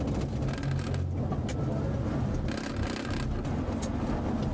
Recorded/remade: recorded